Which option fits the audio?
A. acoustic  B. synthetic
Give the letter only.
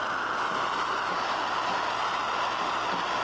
A